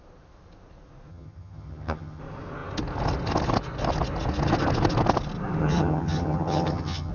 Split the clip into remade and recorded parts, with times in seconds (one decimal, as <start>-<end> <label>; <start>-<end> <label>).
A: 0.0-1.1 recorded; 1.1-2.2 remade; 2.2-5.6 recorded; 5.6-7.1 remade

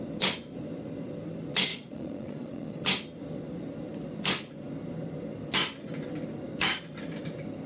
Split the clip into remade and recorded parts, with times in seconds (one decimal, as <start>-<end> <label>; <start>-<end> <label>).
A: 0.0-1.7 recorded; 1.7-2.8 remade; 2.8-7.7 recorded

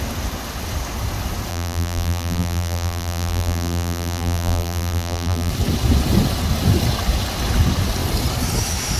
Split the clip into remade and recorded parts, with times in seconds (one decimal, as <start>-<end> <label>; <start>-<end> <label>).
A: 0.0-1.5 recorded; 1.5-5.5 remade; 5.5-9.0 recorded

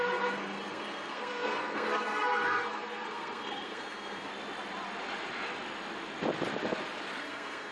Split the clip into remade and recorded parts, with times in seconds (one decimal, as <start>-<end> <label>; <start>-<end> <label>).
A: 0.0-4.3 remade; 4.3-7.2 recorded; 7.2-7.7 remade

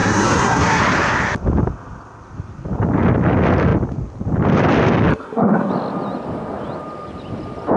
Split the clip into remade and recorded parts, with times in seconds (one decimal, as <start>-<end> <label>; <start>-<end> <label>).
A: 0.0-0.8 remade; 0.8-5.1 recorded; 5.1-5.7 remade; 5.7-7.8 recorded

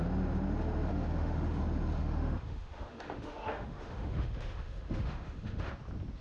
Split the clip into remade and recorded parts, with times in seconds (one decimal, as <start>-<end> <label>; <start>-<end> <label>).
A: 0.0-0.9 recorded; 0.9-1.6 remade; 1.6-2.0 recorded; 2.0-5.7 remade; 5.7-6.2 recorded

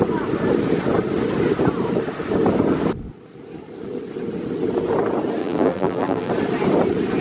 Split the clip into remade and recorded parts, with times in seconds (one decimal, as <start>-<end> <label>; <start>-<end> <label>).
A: 0.0-5.4 recorded; 5.4-6.3 remade; 6.3-7.2 recorded

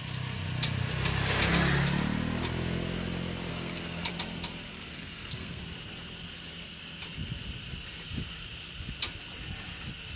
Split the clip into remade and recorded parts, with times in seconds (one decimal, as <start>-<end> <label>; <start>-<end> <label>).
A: 0.0-3.5 recorded; 3.5-4.1 remade; 4.1-4.7 recorded; 4.7-5.6 remade; 5.6-10.2 recorded